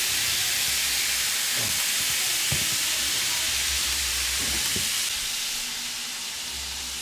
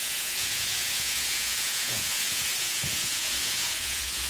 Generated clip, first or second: second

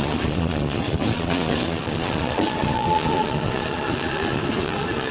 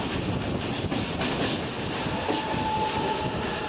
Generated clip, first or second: first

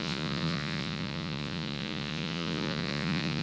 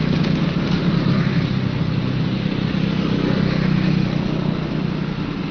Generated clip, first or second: first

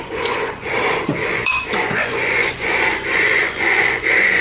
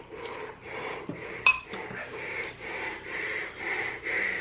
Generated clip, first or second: first